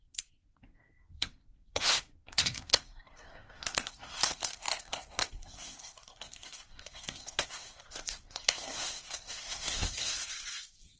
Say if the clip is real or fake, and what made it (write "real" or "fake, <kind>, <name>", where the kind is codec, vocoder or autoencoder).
fake, codec, SNAC